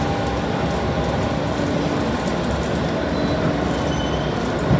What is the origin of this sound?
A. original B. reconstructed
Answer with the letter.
A